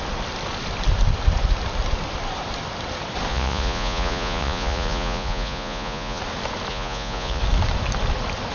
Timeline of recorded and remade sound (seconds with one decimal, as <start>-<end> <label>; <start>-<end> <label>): 0.0-3.3 recorded; 3.3-6.2 remade; 6.2-6.7 recorded; 6.7-7.4 remade; 7.4-8.5 recorded